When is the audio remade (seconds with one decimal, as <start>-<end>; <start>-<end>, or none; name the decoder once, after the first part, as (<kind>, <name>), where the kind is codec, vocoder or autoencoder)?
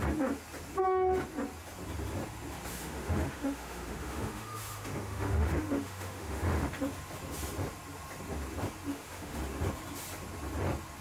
2.7-6.7 (autoencoder, DAC-VAE); 8.9-9.4